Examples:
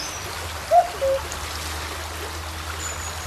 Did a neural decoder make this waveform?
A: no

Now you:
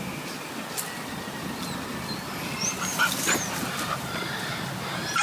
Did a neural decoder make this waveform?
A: no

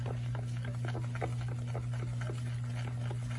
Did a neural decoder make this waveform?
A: no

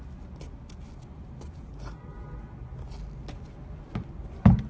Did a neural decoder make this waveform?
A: no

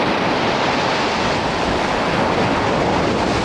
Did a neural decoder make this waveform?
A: no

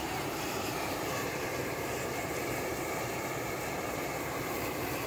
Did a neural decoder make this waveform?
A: yes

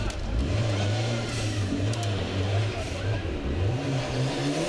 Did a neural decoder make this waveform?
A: yes